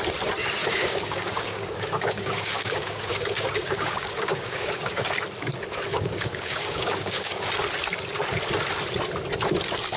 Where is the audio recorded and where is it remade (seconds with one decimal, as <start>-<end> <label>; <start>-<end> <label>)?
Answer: 0.0-0.6 recorded; 0.6-5.1 remade; 5.1-5.9 recorded; 5.9-7.5 remade; 7.5-10.0 recorded